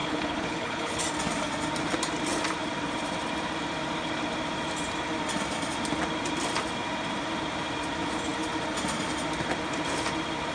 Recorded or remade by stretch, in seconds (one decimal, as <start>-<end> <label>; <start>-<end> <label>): 0.0-1.0 remade; 1.0-10.5 recorded